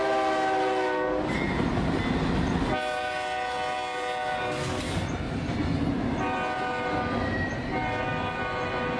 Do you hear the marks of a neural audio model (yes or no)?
no